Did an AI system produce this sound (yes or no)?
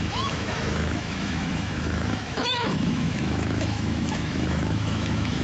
yes